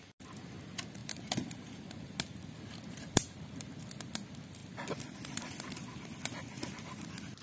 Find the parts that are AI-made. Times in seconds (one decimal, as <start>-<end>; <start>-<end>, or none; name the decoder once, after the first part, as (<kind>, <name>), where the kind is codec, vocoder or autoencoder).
none